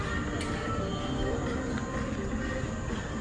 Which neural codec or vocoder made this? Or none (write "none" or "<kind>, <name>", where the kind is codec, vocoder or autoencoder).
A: none